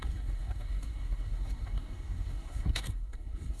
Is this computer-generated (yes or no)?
yes